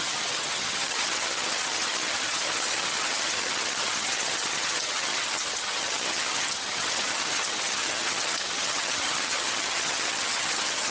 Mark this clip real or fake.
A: fake